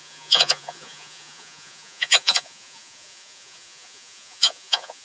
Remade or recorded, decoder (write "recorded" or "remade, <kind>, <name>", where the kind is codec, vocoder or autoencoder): remade, vocoder, Vocos